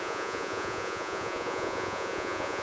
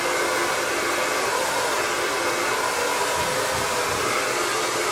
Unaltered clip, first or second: second